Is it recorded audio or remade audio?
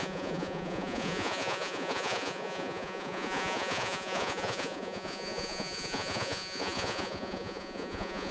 remade